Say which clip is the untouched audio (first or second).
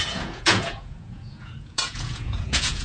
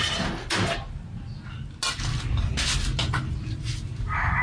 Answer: second